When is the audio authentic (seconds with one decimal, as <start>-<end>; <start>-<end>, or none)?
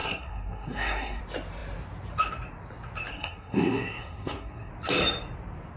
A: 1.2-3.1; 4.7-5.8